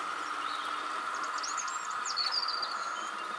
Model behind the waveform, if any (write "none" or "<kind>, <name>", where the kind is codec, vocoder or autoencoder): none